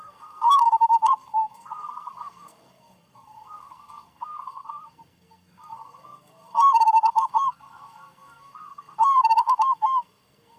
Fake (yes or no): yes